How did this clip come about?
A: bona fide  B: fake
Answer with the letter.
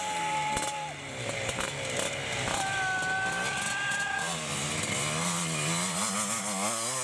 A